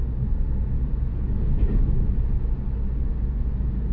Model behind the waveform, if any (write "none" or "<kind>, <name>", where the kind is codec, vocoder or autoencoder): vocoder, Vocos